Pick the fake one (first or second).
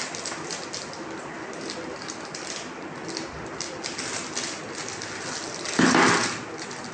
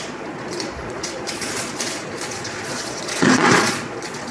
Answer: second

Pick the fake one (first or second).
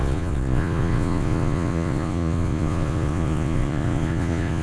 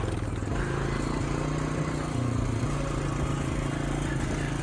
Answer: first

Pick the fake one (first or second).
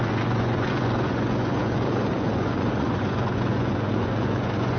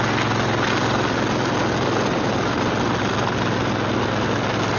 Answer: first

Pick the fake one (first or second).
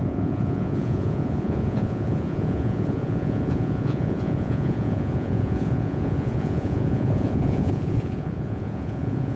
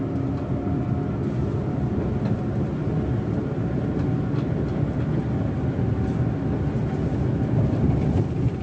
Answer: first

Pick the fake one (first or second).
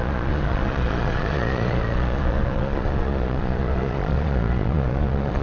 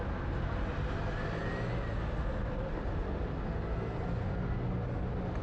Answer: first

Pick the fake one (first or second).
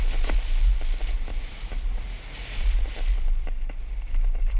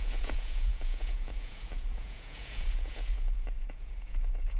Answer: second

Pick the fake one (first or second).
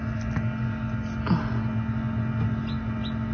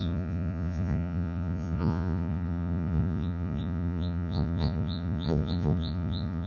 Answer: second